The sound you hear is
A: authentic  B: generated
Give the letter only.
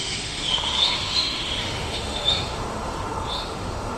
B